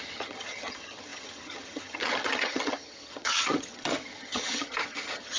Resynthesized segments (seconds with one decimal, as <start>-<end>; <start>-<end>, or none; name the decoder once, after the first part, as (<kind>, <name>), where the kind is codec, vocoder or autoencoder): 0.0-5.4 (vocoder, HiFi-GAN)